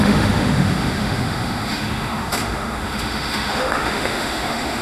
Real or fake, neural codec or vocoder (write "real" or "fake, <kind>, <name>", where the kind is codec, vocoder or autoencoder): fake, autoencoder, DAC-VAE